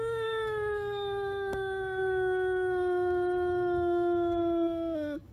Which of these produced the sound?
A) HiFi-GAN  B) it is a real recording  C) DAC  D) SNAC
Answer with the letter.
C